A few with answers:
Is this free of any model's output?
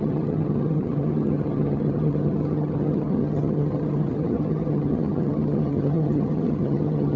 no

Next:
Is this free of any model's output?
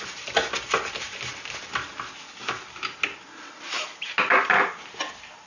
yes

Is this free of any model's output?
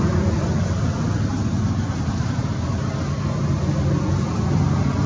yes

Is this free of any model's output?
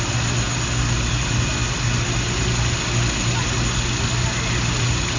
yes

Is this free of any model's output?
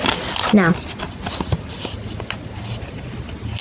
yes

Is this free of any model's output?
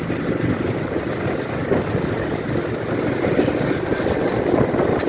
yes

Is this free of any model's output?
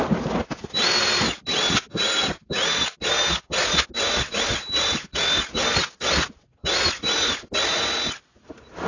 yes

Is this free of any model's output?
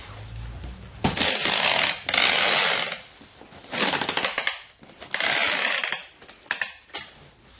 yes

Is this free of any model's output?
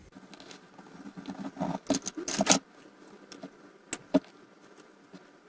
yes